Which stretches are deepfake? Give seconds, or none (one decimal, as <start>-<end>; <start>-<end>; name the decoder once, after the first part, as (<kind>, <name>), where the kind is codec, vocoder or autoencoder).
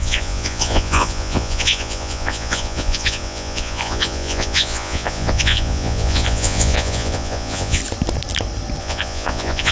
0.0-7.8 (vocoder, Vocos); 8.8-9.7